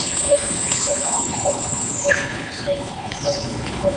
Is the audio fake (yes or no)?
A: yes